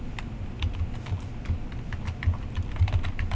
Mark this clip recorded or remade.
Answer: recorded